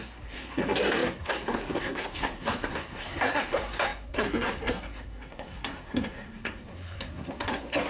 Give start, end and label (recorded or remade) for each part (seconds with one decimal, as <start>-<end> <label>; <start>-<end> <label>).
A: 0.0-7.9 remade